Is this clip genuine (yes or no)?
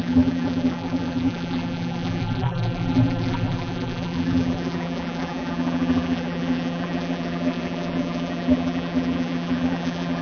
no